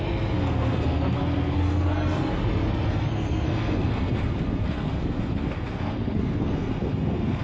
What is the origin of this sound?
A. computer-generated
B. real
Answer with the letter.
A